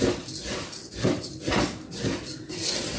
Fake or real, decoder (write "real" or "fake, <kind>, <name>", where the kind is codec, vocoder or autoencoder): real